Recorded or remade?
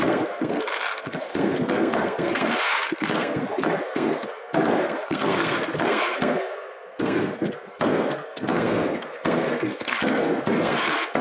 remade